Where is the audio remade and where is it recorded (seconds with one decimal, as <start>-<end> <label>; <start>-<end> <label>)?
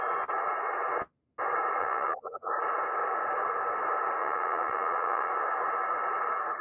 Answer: 0.0-1.8 recorded; 1.8-2.5 remade; 2.5-4.2 recorded; 4.2-5.3 remade; 5.3-6.6 recorded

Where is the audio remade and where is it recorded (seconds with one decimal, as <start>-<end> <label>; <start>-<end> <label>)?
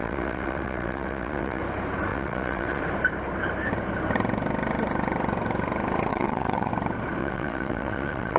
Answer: 0.0-1.6 remade; 1.6-2.1 recorded; 2.1-2.8 remade; 2.8-6.1 recorded; 6.1-6.7 remade; 6.7-7.2 recorded; 7.2-8.4 remade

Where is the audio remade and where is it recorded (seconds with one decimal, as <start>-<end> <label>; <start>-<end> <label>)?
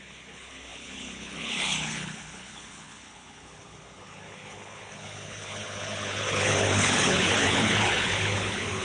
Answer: 0.0-8.8 remade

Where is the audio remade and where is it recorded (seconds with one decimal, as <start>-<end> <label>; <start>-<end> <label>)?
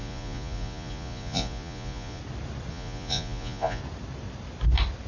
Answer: 0.0-2.2 remade; 2.2-2.7 recorded; 2.7-3.8 remade; 3.8-5.1 recorded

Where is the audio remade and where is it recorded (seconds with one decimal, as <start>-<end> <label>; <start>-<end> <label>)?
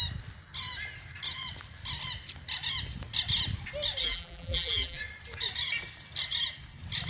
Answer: 0.0-4.0 recorded; 4.0-5.0 remade; 5.0-7.1 recorded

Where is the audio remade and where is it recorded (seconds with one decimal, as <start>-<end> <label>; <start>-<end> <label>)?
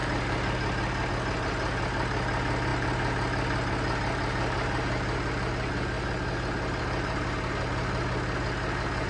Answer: 0.0-9.1 recorded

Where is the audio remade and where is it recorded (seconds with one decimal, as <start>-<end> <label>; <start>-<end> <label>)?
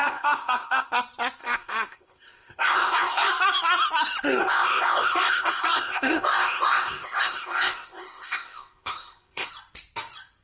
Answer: 0.0-0.9 remade; 0.9-1.4 recorded; 1.4-3.3 remade; 3.3-4.4 recorded; 4.4-9.5 remade; 9.5-10.4 recorded